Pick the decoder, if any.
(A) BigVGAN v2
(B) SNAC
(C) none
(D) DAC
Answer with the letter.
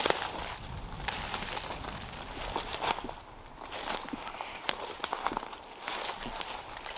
C